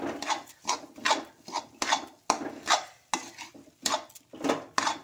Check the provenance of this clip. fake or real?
real